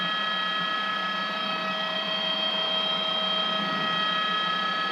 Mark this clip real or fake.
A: real